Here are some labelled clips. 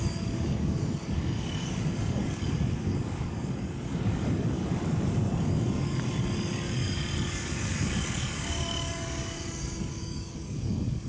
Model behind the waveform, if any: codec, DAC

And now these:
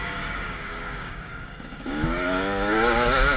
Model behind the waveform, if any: codec, DAC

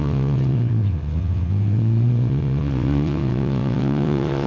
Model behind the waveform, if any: vocoder, WaveNeXt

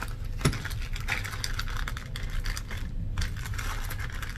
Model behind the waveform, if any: none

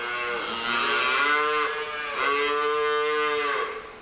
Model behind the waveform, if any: none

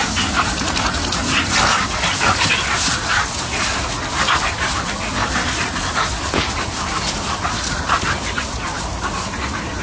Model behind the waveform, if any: none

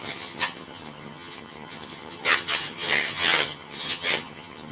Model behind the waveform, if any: vocoder, HiFi-GAN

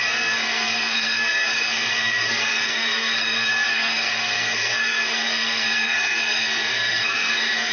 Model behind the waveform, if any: codec, SNAC